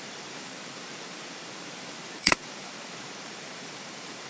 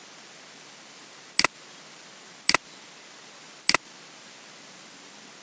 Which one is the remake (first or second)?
first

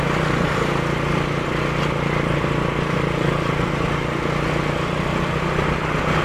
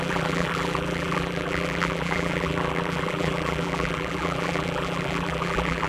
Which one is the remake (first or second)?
second